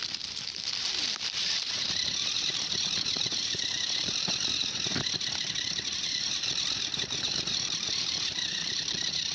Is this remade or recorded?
remade